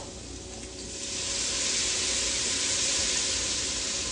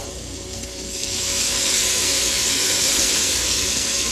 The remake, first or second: second